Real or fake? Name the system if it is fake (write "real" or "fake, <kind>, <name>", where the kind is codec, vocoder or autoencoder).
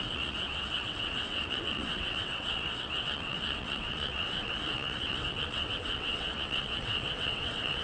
fake, vocoder, WaveNeXt